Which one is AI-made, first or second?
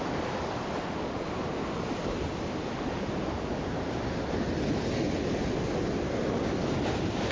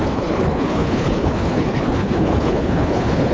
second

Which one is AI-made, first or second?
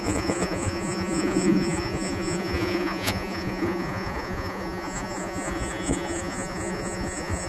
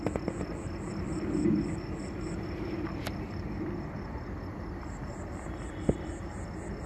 first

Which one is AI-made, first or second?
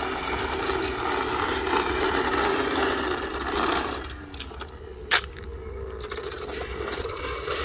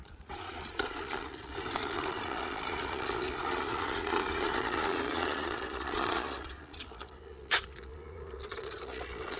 second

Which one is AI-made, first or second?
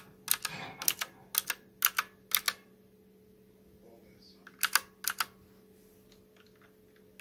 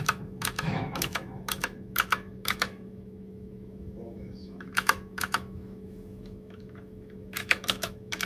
second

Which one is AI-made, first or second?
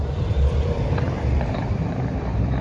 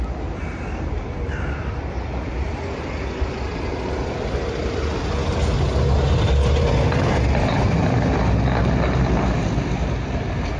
first